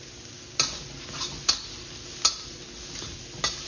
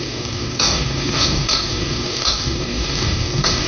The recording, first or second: first